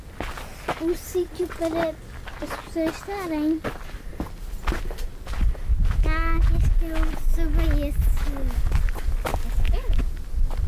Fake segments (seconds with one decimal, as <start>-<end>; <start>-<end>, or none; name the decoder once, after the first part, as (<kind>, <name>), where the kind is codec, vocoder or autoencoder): 9.3-10.0 (codec, DAC)